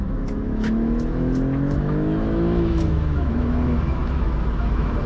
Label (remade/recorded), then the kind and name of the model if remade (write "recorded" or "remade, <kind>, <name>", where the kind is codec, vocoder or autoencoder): remade, autoencoder, DAC-VAE